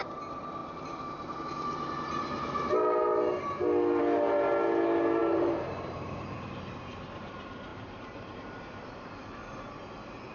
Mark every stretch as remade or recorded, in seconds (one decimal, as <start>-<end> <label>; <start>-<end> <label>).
0.0-0.6 recorded; 0.6-1.4 remade; 1.4-5.2 recorded; 5.2-6.4 remade; 6.4-7.7 recorded; 7.7-8.9 remade; 8.9-10.3 recorded